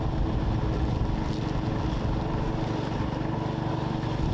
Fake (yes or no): no